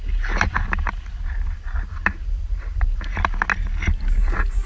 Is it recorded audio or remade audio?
recorded